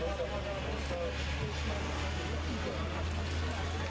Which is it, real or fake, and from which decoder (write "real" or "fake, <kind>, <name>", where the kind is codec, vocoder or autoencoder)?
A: real